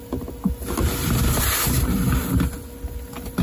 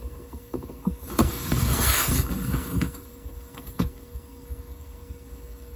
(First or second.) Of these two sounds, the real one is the first